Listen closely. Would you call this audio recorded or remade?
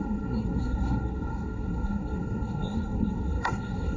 remade